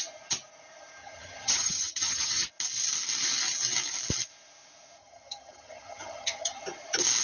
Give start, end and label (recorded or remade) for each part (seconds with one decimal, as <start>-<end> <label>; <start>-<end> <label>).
0.0-1.0 recorded; 1.0-2.5 remade; 2.5-5.0 recorded; 5.0-6.6 remade; 6.6-7.2 recorded